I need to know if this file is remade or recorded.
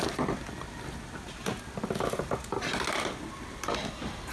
recorded